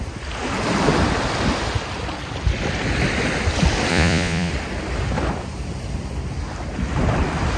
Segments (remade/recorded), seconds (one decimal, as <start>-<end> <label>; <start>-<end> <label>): 0.0-3.9 recorded; 3.9-4.5 remade; 4.5-7.6 recorded